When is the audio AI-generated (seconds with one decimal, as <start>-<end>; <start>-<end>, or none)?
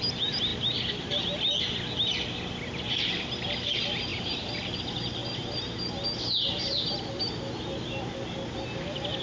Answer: 4.1-4.8